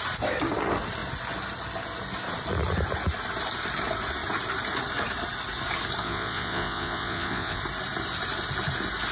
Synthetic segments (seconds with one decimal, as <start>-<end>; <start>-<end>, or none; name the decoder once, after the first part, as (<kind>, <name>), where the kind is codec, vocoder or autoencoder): 6.0-7.6 (vocoder, Vocos)